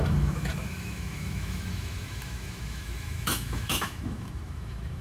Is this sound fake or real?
fake